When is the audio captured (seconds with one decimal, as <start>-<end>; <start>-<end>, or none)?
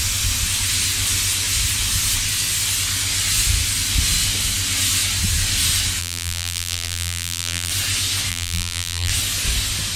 0.0-6.0; 7.7-8.3; 9.1-10.0